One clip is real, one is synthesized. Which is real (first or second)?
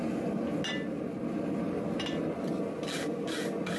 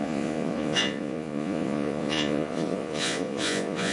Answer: first